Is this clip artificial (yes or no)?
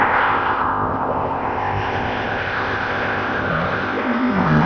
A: yes